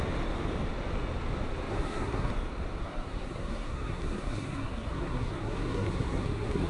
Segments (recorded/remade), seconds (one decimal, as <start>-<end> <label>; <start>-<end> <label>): 0.0-1.7 recorded; 1.7-2.3 remade; 2.3-2.8 recorded; 2.8-6.7 remade